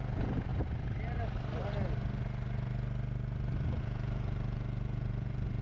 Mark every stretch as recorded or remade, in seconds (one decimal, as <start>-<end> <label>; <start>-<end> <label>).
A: 0.0-0.5 remade; 0.5-3.8 recorded; 3.8-5.6 remade